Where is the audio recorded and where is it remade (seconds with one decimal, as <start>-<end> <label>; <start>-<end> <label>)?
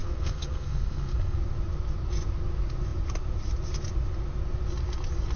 0.0-1.4 remade; 1.4-5.4 recorded